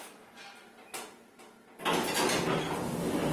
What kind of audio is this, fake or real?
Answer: real